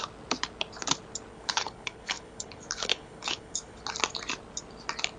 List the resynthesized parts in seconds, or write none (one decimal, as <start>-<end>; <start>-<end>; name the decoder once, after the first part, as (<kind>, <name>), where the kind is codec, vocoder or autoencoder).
1.3-3.8 (codec, HILCodec)